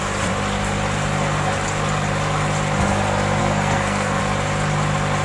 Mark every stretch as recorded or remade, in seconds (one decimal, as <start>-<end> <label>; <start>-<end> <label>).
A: 0.0-3.4 recorded; 3.4-4.2 remade; 4.2-5.2 recorded